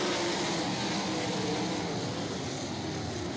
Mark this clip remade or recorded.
recorded